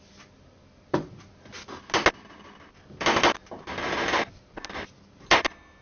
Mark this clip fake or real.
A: real